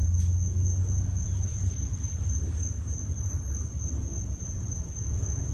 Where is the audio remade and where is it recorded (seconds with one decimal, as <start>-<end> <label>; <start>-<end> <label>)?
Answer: 0.0-1.5 remade; 1.5-4.8 recorded; 4.8-5.5 remade